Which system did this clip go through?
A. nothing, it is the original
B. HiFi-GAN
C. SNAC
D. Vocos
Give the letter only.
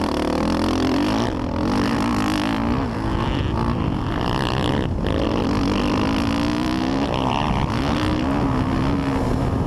A